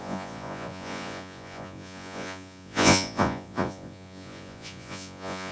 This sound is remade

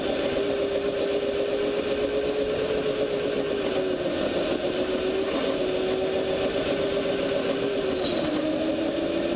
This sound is recorded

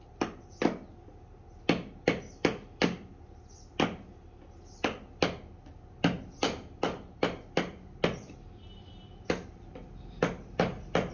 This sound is recorded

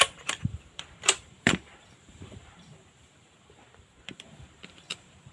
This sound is remade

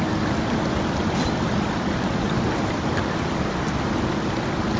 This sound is recorded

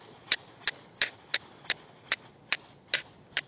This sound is recorded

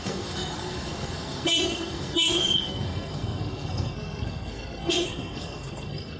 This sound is remade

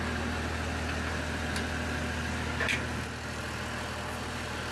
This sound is recorded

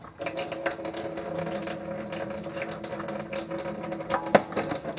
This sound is recorded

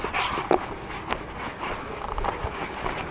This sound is recorded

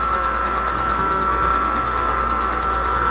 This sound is remade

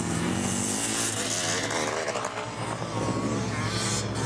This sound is recorded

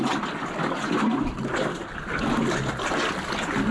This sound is recorded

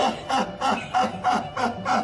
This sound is recorded